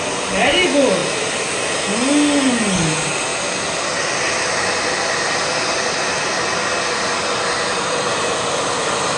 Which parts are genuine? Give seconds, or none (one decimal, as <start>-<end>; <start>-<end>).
0.0-9.2